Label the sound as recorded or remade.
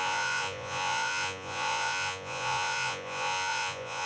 remade